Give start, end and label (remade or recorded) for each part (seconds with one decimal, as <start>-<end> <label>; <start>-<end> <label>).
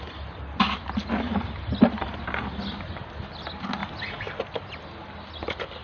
0.0-5.8 recorded